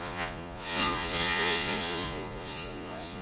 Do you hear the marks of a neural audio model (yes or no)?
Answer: yes